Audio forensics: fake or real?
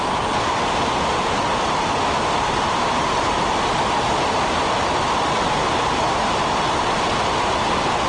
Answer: real